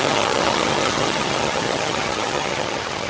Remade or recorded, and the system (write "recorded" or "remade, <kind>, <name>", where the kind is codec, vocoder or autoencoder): remade, vocoder, HiFi-GAN